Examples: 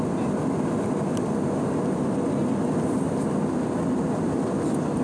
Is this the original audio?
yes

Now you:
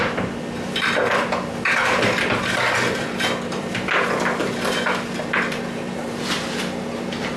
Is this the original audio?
yes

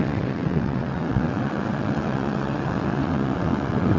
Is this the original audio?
no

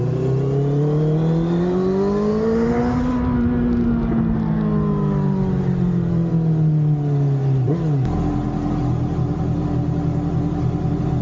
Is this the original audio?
yes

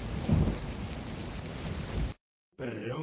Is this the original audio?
yes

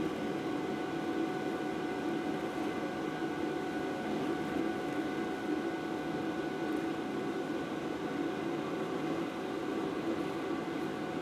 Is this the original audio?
yes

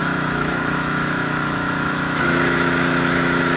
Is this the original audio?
no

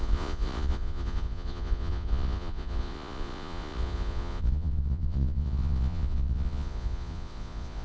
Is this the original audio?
no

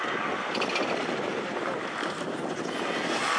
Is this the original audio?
yes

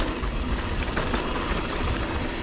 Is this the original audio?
yes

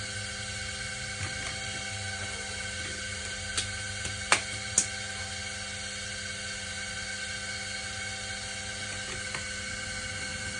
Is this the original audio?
yes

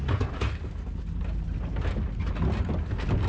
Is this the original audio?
yes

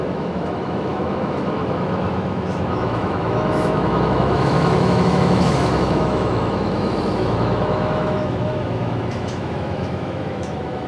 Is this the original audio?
no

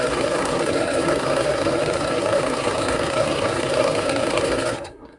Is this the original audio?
no